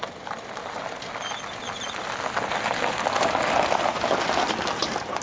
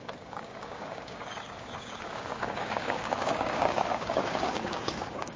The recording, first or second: first